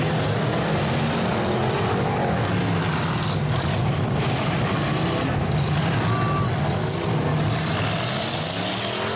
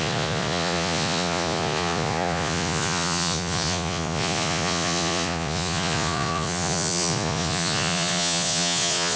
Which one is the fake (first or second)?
second